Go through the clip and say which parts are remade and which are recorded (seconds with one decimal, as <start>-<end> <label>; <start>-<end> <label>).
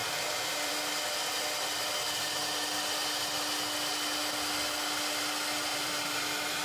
0.0-0.7 remade; 0.7-5.7 recorded; 5.7-6.6 remade